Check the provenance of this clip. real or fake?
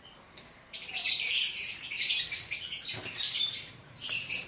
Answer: fake